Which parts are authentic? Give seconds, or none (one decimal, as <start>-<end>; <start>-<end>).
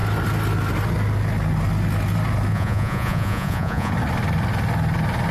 0.0-2.5; 3.9-5.3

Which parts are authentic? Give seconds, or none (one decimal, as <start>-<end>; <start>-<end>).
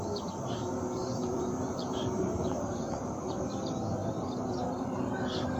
0.0-0.6; 3.2-5.6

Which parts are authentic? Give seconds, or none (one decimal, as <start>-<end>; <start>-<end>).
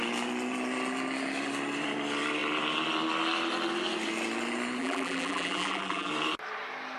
0.0-4.8; 6.1-7.0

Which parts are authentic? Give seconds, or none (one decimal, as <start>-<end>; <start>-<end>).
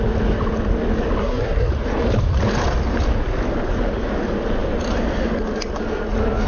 0.0-1.2; 1.7-6.5